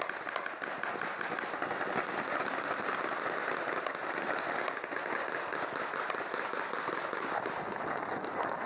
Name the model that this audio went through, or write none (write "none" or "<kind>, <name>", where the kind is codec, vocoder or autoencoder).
none